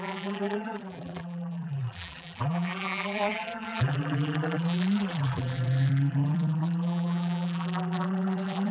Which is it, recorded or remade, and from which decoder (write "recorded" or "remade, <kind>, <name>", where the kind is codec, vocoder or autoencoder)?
remade, vocoder, BigVGAN v2